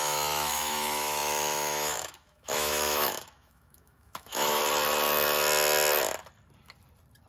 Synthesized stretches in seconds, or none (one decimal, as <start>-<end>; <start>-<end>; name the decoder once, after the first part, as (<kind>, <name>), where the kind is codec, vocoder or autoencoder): 0.0-4.6 (autoencoder, DAC-VAE)